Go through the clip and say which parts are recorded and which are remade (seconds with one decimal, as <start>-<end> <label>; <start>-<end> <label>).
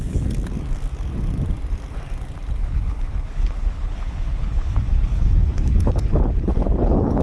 0.0-2.6 recorded; 2.6-7.2 remade